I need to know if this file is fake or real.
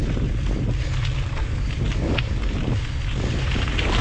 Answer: real